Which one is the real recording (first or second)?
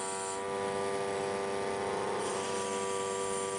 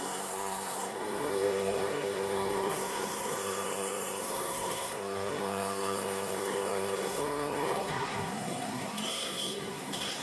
first